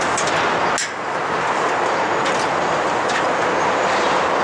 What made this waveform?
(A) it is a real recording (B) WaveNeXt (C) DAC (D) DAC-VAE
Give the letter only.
A